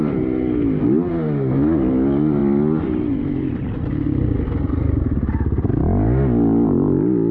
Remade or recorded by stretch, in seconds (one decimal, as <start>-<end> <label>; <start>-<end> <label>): 0.0-7.3 recorded